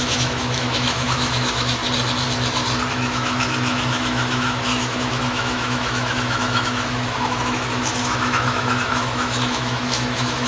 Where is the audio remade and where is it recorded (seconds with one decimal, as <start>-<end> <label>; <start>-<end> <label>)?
0.0-1.8 remade; 1.8-2.9 recorded; 2.9-10.5 remade